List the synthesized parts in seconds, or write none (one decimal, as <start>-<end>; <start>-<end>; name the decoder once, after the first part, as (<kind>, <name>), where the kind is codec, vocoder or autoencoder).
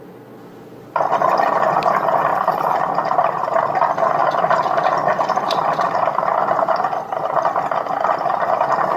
2.3-2.8 (vocoder, BigVGAN v2)